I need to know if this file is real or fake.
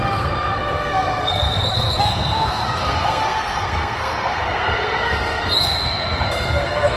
fake